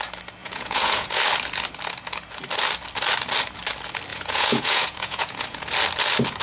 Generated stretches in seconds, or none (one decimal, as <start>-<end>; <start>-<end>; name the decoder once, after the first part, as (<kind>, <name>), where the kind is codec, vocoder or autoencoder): 0.4-1.2 (vocoder, Vocos); 4.1-5.6